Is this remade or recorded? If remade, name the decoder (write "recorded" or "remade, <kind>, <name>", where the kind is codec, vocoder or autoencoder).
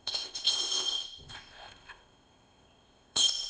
remade, codec, ZipCodec